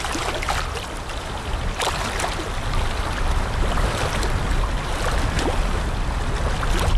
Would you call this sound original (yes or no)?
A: yes